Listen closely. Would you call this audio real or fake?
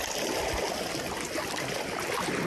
real